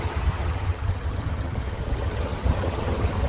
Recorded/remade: remade